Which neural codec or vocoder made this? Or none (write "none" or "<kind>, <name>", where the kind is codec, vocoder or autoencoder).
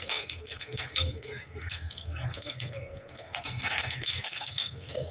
codec, SNAC